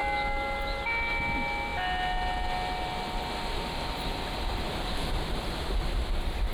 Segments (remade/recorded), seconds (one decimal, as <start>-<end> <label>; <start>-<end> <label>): 0.0-6.5 recorded